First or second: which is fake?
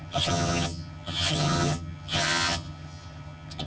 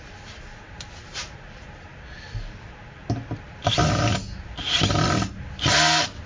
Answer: first